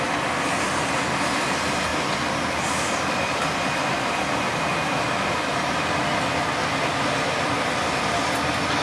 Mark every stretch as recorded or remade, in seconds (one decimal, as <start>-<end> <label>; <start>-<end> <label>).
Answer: 0.0-8.8 recorded